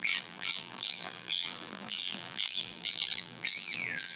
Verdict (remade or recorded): remade